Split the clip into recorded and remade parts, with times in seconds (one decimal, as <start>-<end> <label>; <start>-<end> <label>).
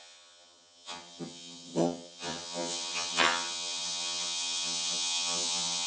0.0-5.9 remade